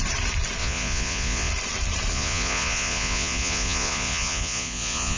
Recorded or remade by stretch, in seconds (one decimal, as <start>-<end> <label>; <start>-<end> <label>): 0.0-0.6 recorded; 0.6-1.5 remade; 1.5-2.1 recorded; 2.1-5.2 remade